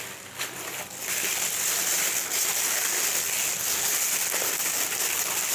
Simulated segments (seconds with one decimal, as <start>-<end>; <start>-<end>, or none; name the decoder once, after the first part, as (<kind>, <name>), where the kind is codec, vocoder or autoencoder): none